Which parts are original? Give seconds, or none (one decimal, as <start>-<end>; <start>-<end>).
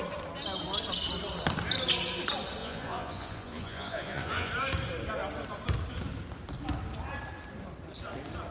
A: 0.0-2.6; 4.5-8.5